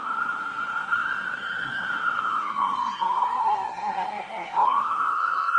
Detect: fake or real fake